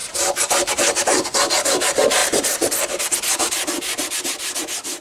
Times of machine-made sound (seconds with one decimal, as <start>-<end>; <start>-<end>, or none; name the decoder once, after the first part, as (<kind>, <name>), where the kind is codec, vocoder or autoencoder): 0.0-0.7 (vocoder, BigVGAN v2); 2.2-3.0